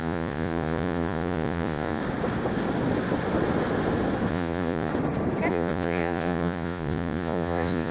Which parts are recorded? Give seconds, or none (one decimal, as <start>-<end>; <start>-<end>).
2.0-4.3; 4.9-5.5

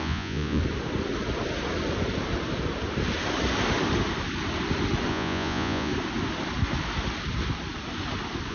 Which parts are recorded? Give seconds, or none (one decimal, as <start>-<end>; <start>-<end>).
0.6-5.1; 5.9-8.5

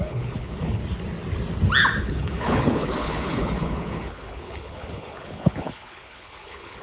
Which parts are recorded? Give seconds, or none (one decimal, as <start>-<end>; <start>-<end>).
0.8-2.0

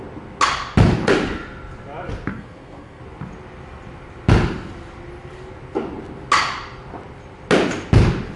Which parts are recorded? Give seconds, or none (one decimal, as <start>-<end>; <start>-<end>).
0.0-2.3; 3.0-8.4

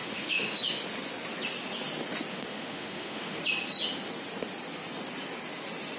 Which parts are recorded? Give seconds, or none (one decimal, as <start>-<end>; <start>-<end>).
0.6-2.3; 3.4-6.0

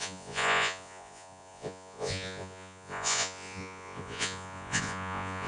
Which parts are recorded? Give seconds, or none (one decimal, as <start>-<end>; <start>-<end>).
none

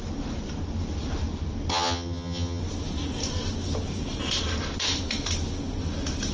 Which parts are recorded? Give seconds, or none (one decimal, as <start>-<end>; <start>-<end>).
0.0-1.7; 2.6-6.3